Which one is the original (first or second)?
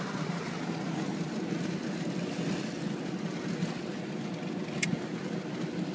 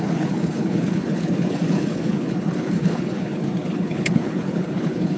first